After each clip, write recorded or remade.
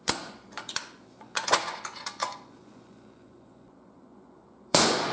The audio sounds remade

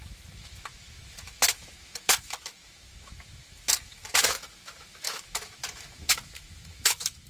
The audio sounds remade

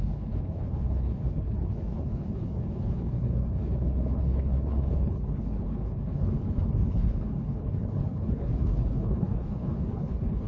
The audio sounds remade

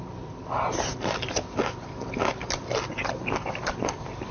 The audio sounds recorded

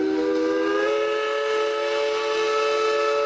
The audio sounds recorded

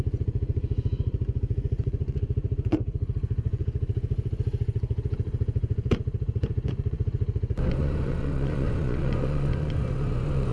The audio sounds remade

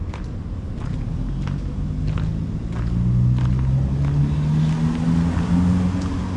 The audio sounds recorded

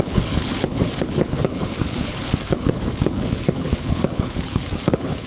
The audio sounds remade